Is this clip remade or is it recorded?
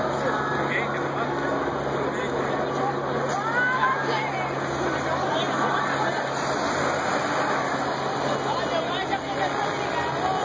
recorded